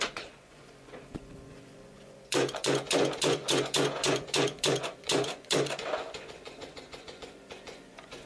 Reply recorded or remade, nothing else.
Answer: remade